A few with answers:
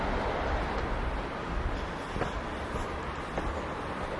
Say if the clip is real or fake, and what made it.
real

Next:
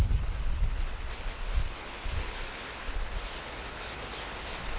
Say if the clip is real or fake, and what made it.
fake, codec, HILCodec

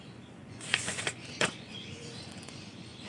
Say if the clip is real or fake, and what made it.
fake, vocoder, Vocos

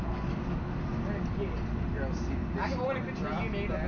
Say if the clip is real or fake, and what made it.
real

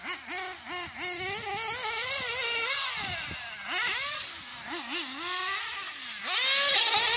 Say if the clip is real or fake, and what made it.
real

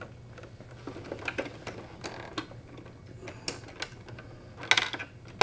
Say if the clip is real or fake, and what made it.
real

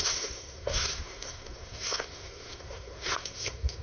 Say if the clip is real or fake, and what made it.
fake, codec, SNAC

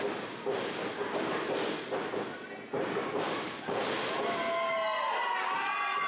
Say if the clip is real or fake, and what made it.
real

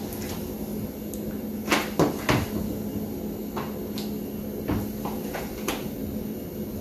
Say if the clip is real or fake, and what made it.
real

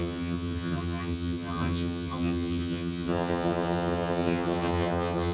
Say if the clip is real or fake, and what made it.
fake, vocoder, HiFi-GAN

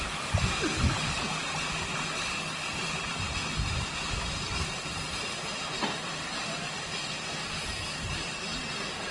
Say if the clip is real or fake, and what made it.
real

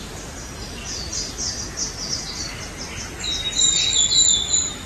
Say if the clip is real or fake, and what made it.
real